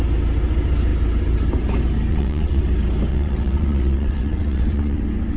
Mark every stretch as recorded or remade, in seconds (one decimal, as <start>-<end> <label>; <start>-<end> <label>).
0.0-2.1 recorded; 2.1-2.6 remade; 2.6-3.1 recorded; 3.1-5.0 remade; 5.0-5.4 recorded